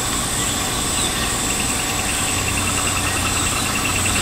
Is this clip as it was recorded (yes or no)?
yes